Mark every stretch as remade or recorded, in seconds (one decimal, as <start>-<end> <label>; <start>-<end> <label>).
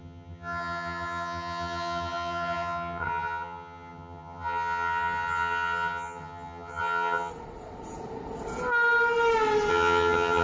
0.0-7.3 remade; 7.3-9.7 recorded; 9.7-10.4 remade